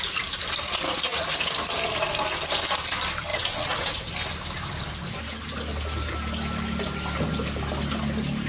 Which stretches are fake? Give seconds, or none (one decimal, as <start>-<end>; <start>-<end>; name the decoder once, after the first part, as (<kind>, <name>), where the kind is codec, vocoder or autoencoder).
3.3-4.1 (vocoder, WaveNeXt)